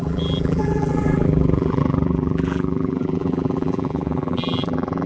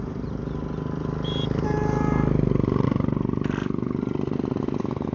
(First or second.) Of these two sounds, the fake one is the first